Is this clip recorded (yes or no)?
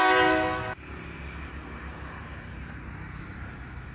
yes